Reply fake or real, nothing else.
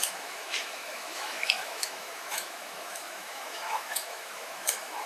fake